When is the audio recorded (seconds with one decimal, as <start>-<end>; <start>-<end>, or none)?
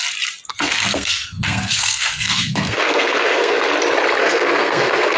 0.0-0.5; 3.6-4.2